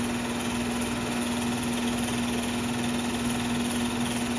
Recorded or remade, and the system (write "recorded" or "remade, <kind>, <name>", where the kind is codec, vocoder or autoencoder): recorded